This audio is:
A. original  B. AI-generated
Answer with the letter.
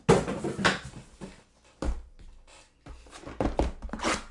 A